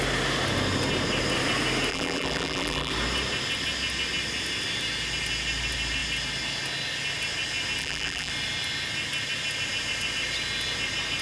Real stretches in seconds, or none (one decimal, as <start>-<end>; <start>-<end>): 0.0-1.9; 2.9-7.8; 8.3-11.2